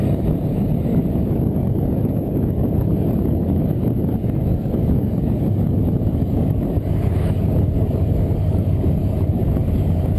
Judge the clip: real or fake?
fake